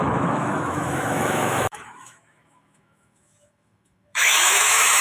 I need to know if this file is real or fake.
fake